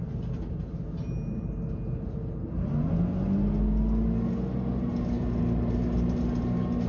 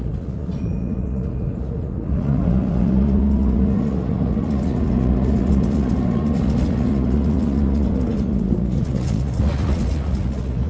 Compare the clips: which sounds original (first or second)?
first